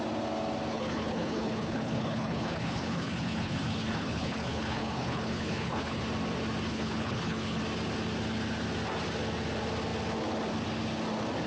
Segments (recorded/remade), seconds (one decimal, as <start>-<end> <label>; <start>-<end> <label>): 0.0-0.7 recorded; 0.7-6.0 remade; 6.0-6.7 recorded; 6.7-7.6 remade; 7.6-11.5 recorded